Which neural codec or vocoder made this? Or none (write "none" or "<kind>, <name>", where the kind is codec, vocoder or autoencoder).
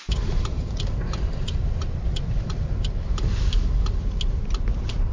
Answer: vocoder, BigVGAN v2